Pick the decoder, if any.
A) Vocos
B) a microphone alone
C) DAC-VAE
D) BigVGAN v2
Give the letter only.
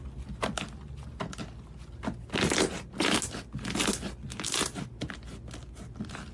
B